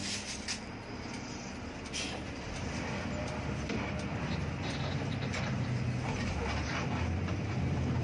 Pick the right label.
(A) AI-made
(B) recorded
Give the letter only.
A